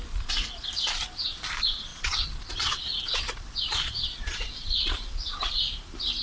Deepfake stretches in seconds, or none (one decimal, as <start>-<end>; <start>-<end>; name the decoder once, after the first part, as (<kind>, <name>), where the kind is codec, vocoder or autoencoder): 1.9-5.6 (vocoder, Vocos)